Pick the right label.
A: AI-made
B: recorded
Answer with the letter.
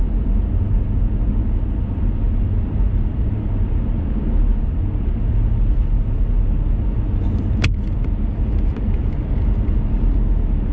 B